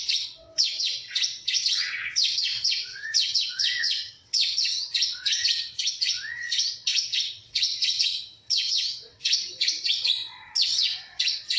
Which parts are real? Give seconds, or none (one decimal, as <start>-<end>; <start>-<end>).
10.1-10.6

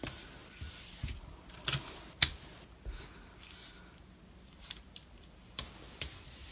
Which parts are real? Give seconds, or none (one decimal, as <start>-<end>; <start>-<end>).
0.0-6.5